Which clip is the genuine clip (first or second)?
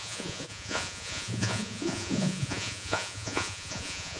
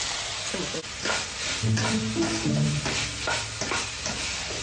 second